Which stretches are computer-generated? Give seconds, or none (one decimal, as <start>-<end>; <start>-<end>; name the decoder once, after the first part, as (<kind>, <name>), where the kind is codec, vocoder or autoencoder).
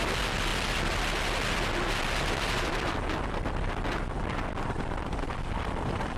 none